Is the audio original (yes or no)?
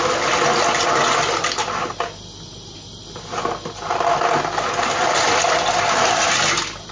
yes